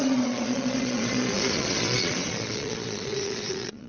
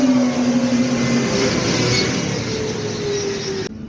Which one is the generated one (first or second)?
first